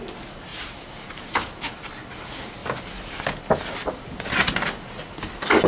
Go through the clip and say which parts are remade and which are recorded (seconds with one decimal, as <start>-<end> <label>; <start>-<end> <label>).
0.0-0.5 recorded; 0.5-1.9 remade; 1.9-5.7 recorded